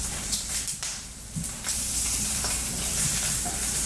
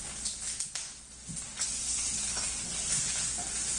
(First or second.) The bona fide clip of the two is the second